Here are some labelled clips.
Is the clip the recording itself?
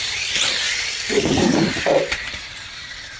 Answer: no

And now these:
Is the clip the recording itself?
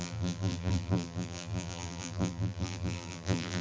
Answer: no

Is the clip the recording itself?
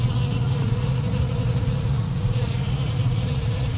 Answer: no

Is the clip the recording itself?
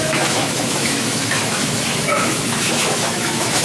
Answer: no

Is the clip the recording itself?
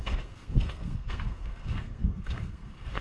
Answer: no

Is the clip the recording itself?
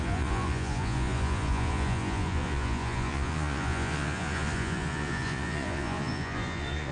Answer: no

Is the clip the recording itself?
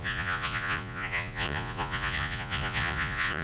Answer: no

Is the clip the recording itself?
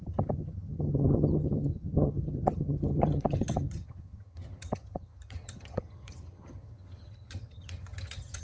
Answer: no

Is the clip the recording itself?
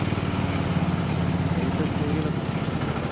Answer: yes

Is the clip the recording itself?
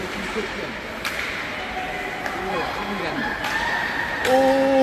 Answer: yes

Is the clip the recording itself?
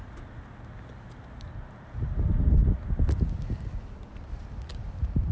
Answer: yes